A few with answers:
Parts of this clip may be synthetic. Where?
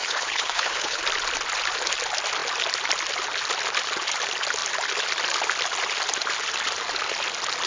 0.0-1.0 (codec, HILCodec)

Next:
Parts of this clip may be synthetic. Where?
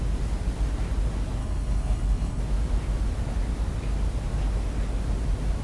1.4-2.4 (codec, HILCodec)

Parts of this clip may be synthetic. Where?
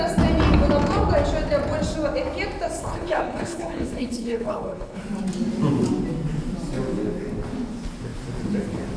2.8-5.0 (codec, HILCodec)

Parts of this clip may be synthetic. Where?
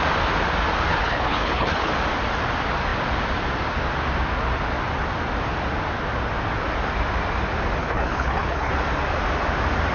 0.9-1.9 (codec, HILCodec); 7.8-8.7